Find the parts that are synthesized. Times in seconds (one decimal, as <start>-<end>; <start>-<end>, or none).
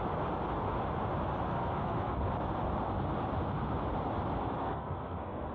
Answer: 1.5-2.3; 4.6-5.5